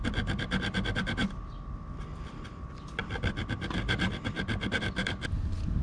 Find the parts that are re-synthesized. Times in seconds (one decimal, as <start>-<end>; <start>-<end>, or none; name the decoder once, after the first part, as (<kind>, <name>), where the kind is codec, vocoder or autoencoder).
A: none